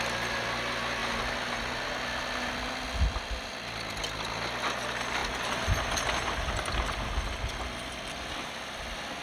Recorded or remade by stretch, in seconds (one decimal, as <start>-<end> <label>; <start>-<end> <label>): 0.0-9.2 recorded

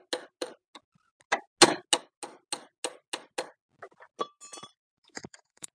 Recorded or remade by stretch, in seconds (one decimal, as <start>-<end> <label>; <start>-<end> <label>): 0.0-4.8 recorded; 4.8-5.7 remade

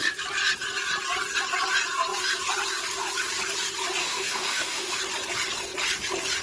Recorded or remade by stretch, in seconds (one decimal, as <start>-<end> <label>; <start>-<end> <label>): 0.0-4.0 recorded; 4.0-5.0 remade; 5.0-6.4 recorded

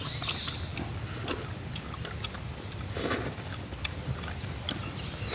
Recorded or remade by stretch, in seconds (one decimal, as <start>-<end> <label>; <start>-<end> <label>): 0.0-5.3 recorded

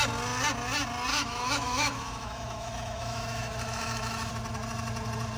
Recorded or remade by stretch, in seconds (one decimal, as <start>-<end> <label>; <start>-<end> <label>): 0.0-1.1 recorded; 1.1-4.3 remade; 4.3-5.4 recorded

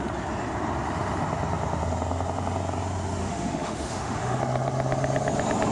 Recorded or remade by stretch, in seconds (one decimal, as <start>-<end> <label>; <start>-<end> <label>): 0.0-3.2 recorded; 3.2-4.4 remade; 4.4-5.7 recorded

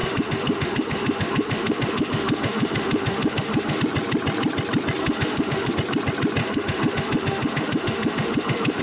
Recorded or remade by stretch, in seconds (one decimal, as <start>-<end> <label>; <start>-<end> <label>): 0.0-3.8 remade; 3.8-5.0 recorded; 5.0-5.7 remade; 5.7-6.4 recorded; 6.4-8.8 remade